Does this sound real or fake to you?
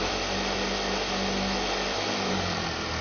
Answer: fake